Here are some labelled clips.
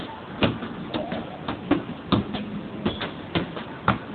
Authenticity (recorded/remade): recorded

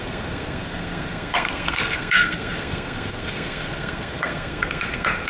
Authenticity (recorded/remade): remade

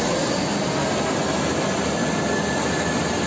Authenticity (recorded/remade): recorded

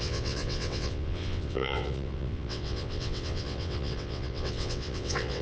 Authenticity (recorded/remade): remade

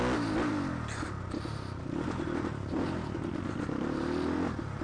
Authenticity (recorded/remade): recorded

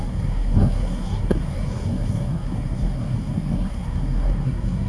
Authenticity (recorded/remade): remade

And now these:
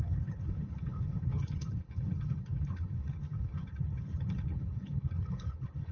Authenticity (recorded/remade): remade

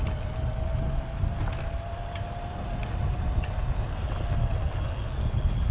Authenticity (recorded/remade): recorded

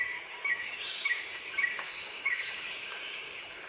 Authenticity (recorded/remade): remade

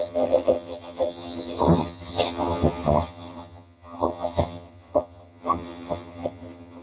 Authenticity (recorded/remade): remade